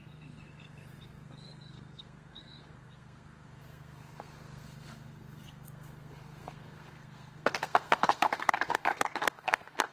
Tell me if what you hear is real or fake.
fake